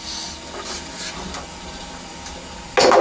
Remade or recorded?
recorded